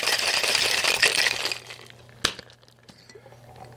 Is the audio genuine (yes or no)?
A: yes